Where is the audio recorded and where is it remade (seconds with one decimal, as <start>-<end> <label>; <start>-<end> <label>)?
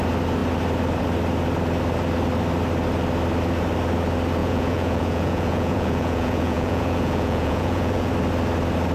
0.0-4.4 recorded; 4.4-8.1 remade; 8.1-8.9 recorded